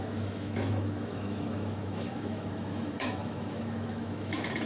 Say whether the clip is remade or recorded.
remade